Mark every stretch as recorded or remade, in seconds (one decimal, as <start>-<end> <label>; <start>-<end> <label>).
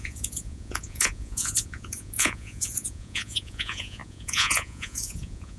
0.0-5.6 remade